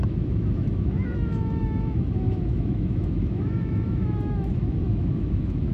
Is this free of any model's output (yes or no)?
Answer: no